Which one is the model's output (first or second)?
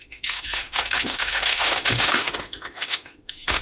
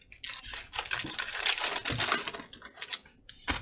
first